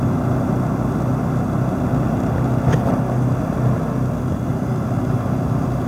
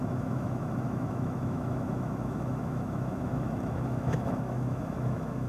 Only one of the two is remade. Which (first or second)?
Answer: second